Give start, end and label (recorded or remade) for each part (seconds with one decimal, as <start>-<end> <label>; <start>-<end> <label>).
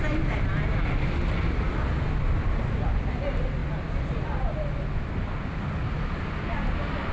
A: 0.0-7.1 recorded